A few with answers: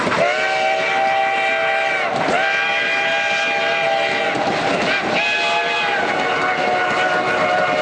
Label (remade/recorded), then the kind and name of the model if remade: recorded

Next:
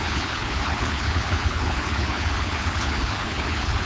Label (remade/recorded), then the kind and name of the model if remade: remade, codec, HILCodec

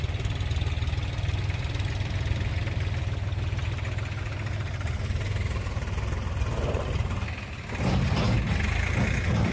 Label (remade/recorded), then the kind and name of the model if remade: recorded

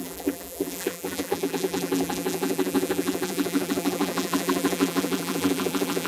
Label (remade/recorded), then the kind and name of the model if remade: remade, vocoder, BigVGAN v2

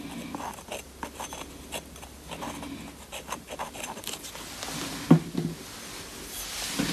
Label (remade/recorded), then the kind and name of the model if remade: recorded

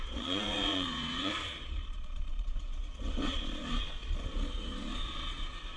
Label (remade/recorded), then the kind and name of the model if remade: remade, vocoder, Vocos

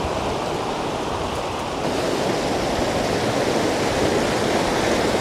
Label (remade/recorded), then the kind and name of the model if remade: recorded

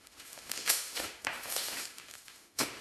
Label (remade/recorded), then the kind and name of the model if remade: remade, autoencoder, DAC-VAE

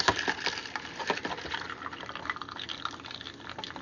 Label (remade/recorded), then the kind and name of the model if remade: recorded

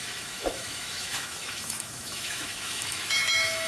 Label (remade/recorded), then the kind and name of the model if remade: remade, autoencoder, DAC-VAE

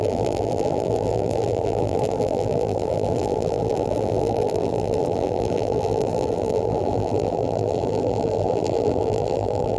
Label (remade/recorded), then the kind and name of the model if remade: remade, vocoder, BigVGAN v2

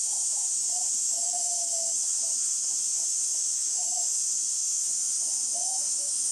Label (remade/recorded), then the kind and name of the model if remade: remade, autoencoder, DAC-VAE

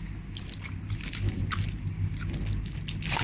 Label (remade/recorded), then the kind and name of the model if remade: recorded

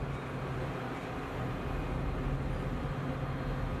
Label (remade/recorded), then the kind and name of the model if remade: recorded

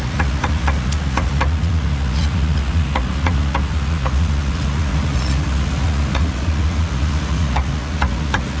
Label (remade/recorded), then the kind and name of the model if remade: remade, vocoder, Vocos